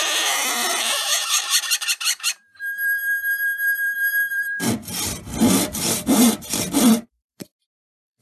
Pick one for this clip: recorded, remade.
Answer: remade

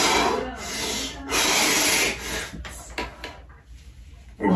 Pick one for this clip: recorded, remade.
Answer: recorded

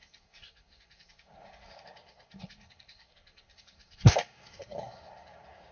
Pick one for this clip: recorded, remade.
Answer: remade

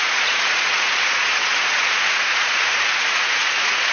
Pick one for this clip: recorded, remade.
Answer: remade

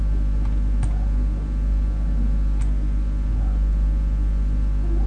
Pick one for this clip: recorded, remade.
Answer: recorded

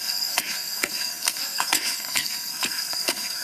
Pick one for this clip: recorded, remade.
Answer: remade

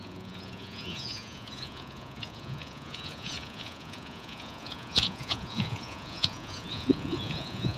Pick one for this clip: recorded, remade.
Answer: remade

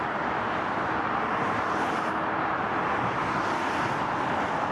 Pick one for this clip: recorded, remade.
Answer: recorded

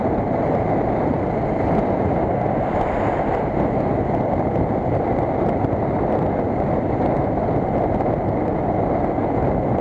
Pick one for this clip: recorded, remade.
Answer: recorded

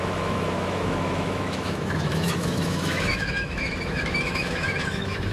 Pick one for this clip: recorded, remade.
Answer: remade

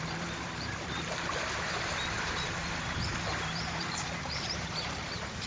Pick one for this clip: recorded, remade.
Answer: remade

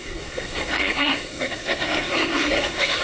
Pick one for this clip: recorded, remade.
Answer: remade